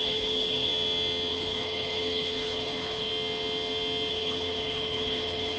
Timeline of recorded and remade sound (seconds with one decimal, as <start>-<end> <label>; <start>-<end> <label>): 0.0-0.7 remade; 0.7-1.3 recorded; 1.3-3.1 remade; 3.1-4.1 recorded; 4.1-5.6 remade